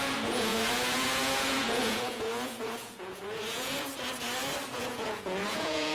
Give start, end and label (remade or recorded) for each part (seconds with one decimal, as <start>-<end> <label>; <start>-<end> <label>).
0.0-3.9 remade; 3.9-4.7 recorded; 4.7-5.9 remade